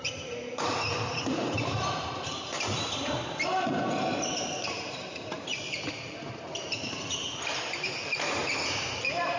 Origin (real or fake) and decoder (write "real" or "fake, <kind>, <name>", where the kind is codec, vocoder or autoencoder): fake, vocoder, BigVGAN v2